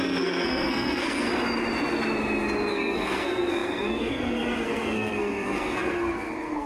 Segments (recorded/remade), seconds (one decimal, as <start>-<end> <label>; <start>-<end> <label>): 0.0-1.3 remade; 1.3-2.7 recorded; 2.7-6.7 remade